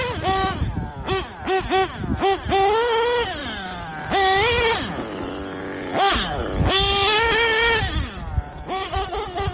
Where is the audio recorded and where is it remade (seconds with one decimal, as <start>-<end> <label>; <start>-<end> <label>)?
0.0-9.5 recorded